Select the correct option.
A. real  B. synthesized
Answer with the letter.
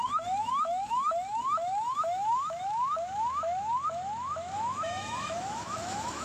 B